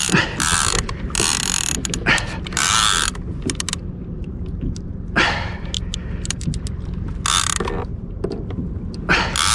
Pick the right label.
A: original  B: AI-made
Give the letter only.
A